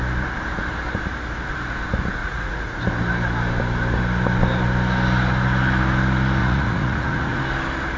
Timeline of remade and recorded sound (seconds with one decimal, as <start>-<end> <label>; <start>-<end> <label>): 0.0-2.2 recorded; 2.2-2.8 remade; 2.8-6.4 recorded; 6.4-7.4 remade; 7.4-8.0 recorded